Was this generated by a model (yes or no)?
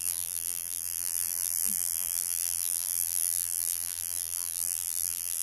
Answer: yes